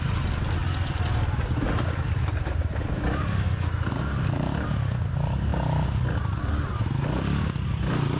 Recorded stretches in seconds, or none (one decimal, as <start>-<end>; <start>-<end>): 0.0-0.6; 4.0-8.2